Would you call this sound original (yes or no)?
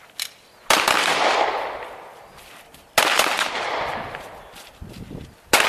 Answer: yes